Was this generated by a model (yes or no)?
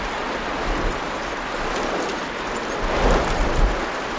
no